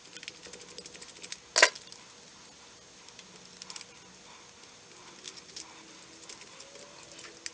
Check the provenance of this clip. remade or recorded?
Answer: recorded